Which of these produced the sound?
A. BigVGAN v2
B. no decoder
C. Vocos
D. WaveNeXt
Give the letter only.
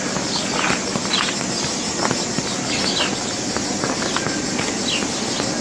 B